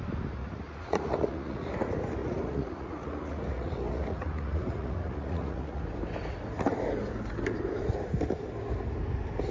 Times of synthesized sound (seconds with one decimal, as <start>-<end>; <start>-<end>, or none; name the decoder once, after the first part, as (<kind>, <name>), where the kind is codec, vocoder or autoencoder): 0.4-1.7 (vocoder, Vocos); 2.2-5.8